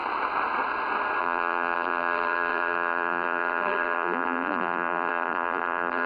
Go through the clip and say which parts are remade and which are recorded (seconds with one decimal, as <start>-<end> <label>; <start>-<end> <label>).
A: 0.0-1.2 recorded; 1.2-6.1 remade